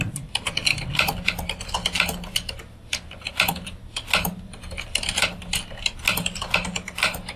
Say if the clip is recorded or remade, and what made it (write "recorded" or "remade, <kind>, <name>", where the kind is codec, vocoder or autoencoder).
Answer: recorded